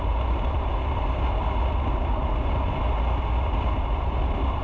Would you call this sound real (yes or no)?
yes